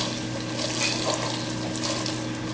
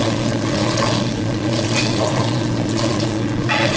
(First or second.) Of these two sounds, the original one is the first